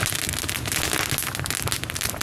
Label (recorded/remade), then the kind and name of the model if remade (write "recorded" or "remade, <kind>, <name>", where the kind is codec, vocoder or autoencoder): recorded